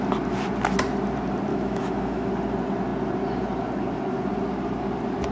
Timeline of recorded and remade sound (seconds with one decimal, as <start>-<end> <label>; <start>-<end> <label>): 0.0-1.5 recorded; 1.5-2.3 remade; 2.3-5.3 recorded